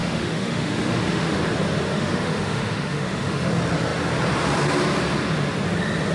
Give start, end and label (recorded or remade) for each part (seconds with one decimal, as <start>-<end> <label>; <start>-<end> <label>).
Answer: 0.0-1.4 remade; 1.4-1.9 recorded; 1.9-3.5 remade; 3.5-6.1 recorded